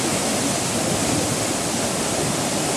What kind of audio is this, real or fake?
real